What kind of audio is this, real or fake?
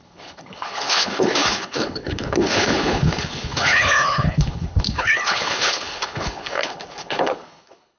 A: fake